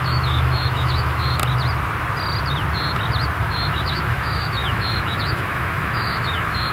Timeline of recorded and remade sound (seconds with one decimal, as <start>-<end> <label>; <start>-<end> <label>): 0.0-1.4 remade; 1.4-3.4 recorded; 3.4-6.7 remade